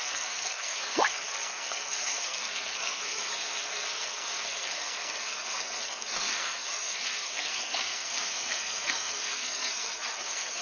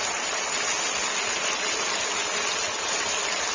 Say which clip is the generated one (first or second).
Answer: first